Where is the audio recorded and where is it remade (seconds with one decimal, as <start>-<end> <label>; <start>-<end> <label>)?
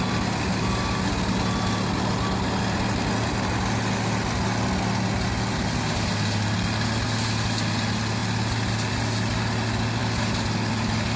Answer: 0.0-11.2 recorded